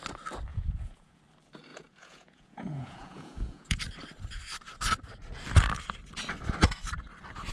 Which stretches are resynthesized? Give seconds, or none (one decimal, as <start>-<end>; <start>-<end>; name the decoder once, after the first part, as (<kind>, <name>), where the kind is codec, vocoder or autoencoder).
0.5-1.2 (vocoder, Vocos); 1.7-3.8